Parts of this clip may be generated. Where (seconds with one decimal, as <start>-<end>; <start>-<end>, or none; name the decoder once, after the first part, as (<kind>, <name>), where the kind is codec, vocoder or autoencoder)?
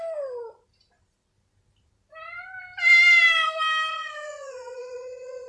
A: 3.9-5.5 (vocoder, Vocos)